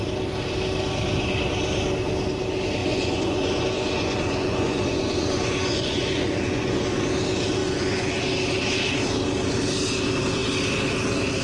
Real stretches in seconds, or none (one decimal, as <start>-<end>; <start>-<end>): 0.0-2.8; 6.8-7.6; 8.2-11.4